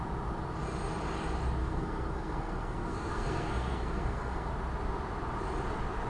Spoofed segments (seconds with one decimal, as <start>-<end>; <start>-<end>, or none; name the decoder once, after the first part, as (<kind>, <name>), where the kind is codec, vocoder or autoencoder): 1.6-4.5 (codec, SNAC)